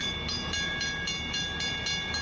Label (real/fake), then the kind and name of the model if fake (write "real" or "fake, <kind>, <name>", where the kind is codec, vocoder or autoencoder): fake, vocoder, BigVGAN v2